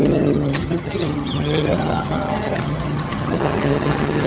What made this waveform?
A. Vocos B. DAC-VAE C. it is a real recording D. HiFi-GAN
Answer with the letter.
D